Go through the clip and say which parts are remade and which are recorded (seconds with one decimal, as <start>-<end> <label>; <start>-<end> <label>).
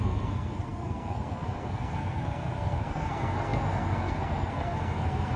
0.0-5.4 remade